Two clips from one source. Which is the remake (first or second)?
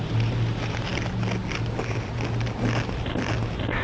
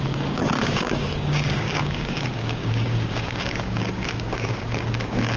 second